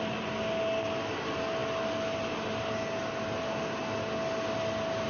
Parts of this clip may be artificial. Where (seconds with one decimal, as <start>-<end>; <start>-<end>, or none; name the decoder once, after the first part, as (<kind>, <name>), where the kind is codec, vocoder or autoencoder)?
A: none